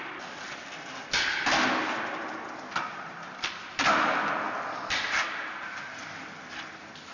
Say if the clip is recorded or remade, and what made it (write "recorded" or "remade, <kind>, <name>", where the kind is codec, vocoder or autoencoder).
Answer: recorded